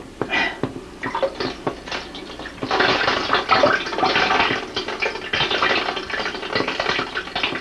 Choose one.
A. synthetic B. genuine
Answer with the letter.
B